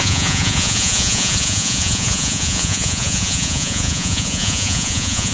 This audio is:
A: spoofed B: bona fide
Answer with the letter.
A